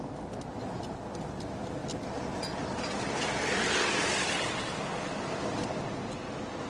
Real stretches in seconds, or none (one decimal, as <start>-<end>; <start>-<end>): 0.0-6.7